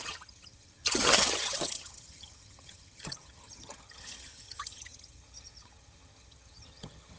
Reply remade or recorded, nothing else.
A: remade